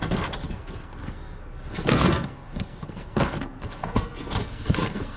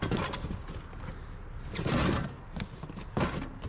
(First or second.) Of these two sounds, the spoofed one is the first